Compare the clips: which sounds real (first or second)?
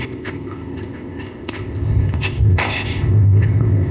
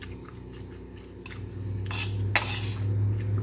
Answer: second